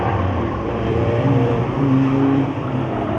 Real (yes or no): no